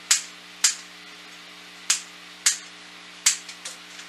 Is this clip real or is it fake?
real